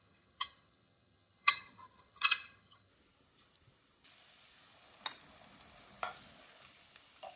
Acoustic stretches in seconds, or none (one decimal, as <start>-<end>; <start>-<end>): 2.9-7.4